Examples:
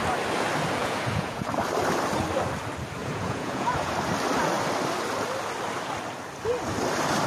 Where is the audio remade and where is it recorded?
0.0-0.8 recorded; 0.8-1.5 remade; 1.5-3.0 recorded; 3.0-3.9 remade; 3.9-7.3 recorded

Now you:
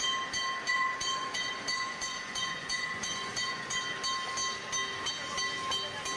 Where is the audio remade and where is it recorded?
0.0-0.7 recorded; 0.7-3.8 remade; 3.8-6.2 recorded

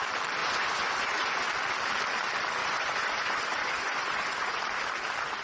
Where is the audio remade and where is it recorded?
0.0-0.4 recorded; 0.4-1.5 remade; 1.5-2.6 recorded; 2.6-4.6 remade; 4.6-5.4 recorded

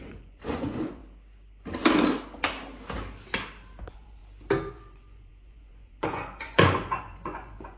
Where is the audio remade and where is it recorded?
0.0-1.0 remade; 1.0-3.8 recorded; 3.8-4.2 remade; 4.2-4.7 recorded; 4.7-7.8 remade

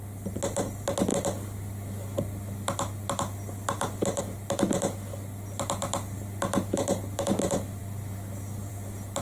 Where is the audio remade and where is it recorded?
0.0-9.2 recorded